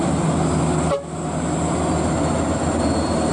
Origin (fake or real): real